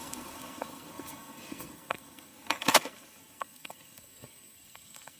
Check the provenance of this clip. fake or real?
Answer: fake